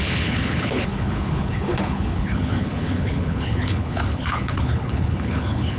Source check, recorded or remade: remade